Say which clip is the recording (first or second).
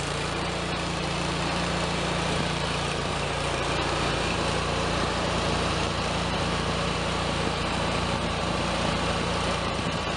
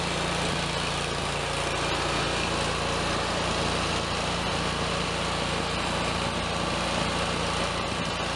second